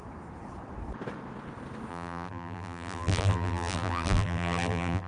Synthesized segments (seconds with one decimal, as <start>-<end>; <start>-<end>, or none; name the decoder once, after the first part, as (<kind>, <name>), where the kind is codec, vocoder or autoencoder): 1.9-5.1 (vocoder, BigVGAN v2)